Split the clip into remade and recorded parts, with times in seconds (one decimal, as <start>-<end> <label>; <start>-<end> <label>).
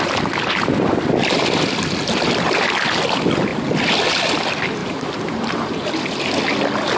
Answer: 0.0-4.8 recorded; 4.8-5.9 remade; 5.9-7.0 recorded